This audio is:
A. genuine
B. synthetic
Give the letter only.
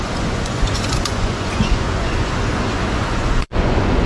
B